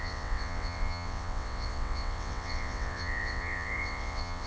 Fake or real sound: fake